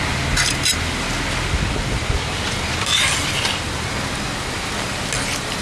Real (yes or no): yes